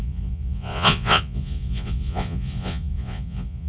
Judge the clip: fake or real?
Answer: fake